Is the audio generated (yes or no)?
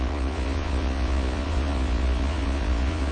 yes